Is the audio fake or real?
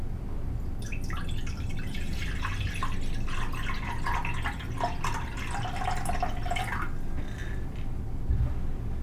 real